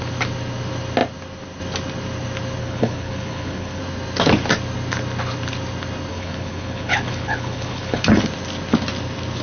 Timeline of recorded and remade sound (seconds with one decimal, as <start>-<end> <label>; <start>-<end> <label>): 0.0-2.6 recorded; 2.6-3.8 remade; 3.8-6.1 recorded; 6.1-8.2 remade; 8.2-9.4 recorded

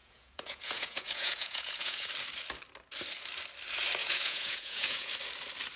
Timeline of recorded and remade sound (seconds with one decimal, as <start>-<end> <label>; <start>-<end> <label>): 0.0-2.1 remade; 2.1-4.0 recorded; 4.0-5.1 remade; 5.1-5.8 recorded